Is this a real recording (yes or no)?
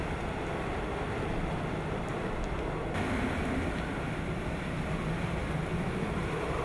yes